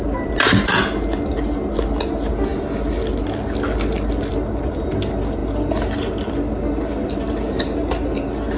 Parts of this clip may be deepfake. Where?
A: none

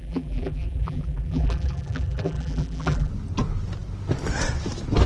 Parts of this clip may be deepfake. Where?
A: 0.0-3.1

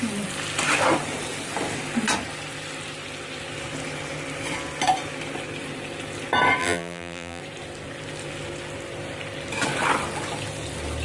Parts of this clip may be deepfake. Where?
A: 6.6-7.4

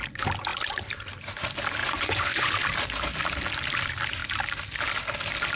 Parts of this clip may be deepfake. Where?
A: 1.8-2.5